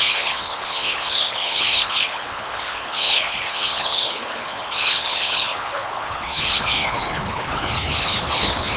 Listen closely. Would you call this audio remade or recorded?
remade